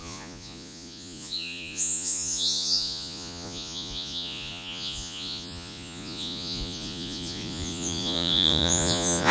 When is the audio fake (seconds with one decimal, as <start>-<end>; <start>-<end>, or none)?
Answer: 0.0-9.3